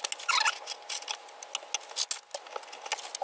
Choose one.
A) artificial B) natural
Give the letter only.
B